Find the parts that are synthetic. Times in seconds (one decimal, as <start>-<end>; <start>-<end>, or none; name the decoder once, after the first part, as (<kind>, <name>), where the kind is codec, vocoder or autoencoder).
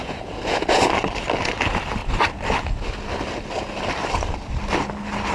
0.0-0.8 (vocoder, Vocos)